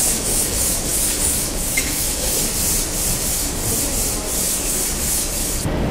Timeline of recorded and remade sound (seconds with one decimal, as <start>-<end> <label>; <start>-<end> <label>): 0.0-2.5 remade; 2.5-3.2 recorded; 3.2-3.6 remade; 3.6-4.4 recorded; 4.4-5.9 remade

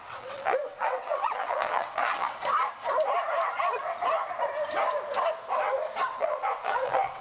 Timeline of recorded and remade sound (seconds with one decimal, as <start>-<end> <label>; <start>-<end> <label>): 0.0-2.4 remade; 2.4-6.1 recorded; 6.1-7.2 remade

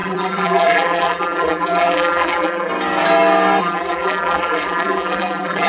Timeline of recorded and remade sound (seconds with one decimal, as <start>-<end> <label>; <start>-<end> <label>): 0.0-2.7 remade; 2.7-3.6 recorded; 3.6-5.7 remade

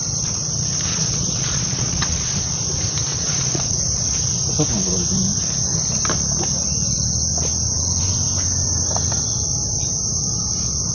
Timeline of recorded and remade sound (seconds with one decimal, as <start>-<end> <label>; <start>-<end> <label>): 0.0-0.9 recorded; 0.9-2.2 remade; 2.2-3.1 recorded; 3.1-3.8 remade; 3.8-10.9 recorded

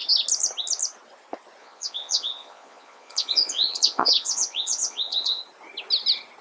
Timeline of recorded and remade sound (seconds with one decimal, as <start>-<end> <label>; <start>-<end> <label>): 0.0-1.6 recorded; 1.6-5.4 remade; 5.4-6.4 recorded

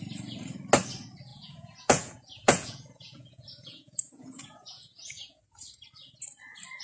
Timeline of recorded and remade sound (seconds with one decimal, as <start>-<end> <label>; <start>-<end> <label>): 0.0-1.3 recorded; 1.3-5.4 remade; 5.4-6.8 recorded

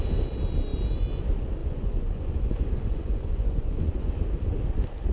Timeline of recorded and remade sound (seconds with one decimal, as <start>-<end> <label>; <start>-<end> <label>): 0.0-1.6 recorded; 1.6-4.1 remade; 4.1-5.1 recorded